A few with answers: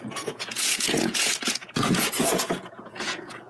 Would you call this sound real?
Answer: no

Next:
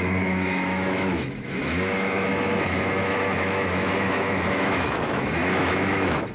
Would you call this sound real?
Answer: no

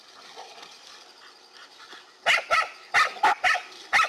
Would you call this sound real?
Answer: yes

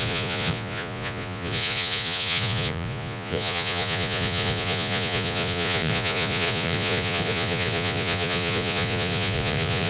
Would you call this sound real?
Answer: no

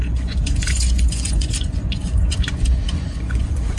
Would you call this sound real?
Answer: no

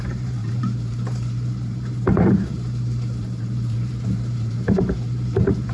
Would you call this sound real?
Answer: no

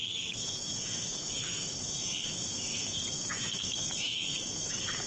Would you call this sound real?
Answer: no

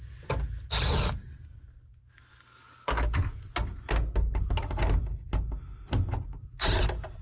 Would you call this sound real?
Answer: yes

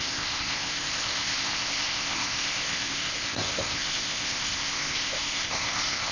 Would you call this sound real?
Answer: no